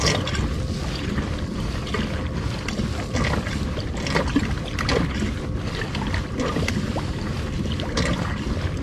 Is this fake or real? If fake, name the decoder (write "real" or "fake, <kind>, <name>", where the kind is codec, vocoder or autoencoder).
real